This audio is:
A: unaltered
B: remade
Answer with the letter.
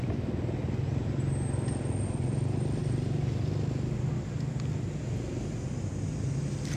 A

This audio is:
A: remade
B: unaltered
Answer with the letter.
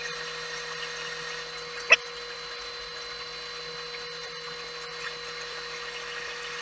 B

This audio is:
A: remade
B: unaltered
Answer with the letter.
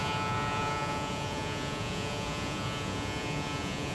A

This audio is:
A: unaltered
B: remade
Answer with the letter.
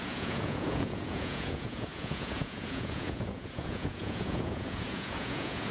B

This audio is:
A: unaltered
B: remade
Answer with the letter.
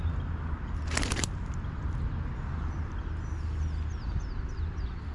A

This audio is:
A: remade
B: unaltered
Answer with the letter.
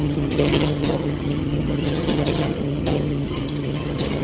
A